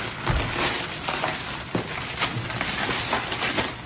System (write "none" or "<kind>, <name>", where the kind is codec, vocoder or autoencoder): none